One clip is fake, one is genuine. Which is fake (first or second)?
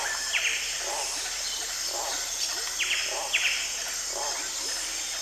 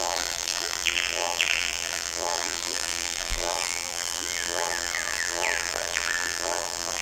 second